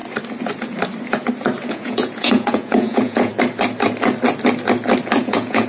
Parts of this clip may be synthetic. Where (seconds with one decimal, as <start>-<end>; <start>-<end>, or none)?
1.7-3.3; 5.2-5.7